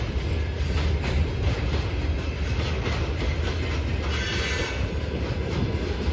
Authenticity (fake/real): real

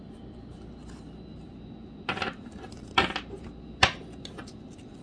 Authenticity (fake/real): real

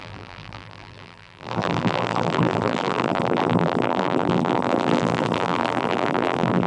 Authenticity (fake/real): fake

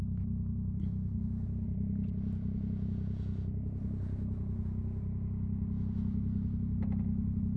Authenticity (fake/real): fake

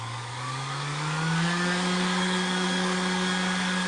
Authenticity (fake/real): fake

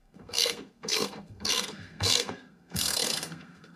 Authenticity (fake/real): fake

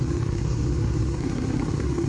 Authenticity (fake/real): fake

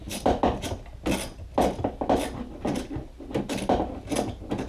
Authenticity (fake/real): real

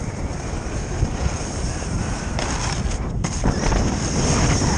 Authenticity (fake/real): real